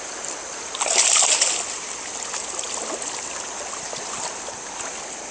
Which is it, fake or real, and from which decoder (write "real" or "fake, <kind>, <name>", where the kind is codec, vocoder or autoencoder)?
real